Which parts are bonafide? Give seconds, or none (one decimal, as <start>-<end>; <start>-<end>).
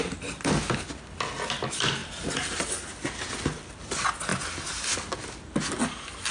0.0-6.3